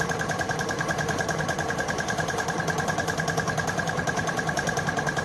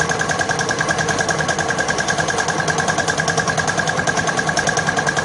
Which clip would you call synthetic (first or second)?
first